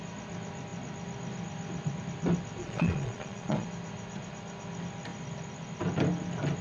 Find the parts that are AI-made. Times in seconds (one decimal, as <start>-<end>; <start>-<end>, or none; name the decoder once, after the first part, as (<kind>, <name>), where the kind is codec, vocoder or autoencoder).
2.6-3.7 (vocoder, Vocos)